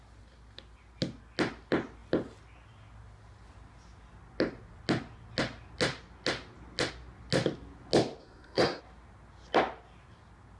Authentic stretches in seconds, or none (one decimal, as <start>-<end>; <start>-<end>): 0.0-8.2; 8.8-10.6